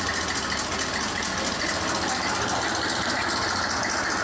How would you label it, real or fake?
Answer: real